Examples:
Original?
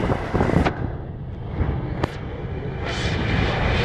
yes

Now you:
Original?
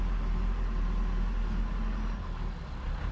yes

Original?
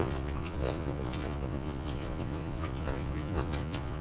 no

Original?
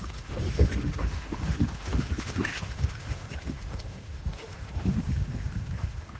no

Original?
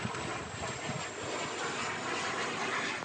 yes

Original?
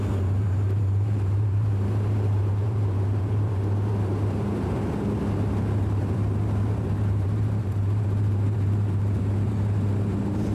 no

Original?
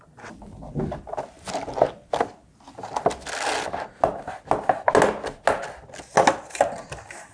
yes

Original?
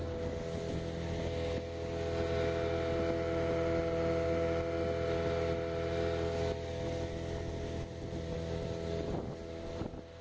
yes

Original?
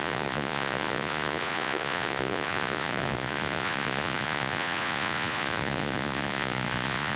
no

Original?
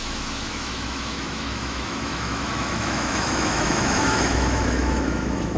no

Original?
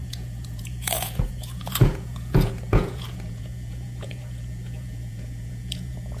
no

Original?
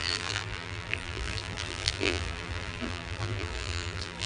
no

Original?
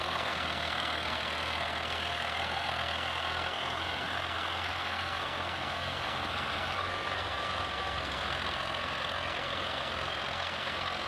no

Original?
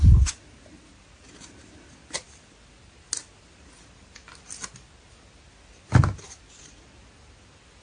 yes